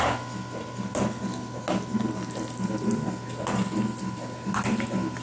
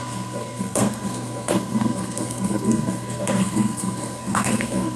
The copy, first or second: second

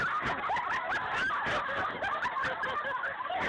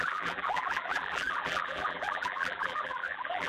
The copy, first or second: second